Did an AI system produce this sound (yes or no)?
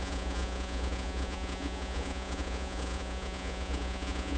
yes